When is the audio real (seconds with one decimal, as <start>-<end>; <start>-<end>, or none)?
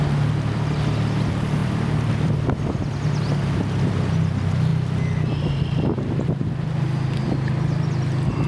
0.0-1.6; 3.2-8.5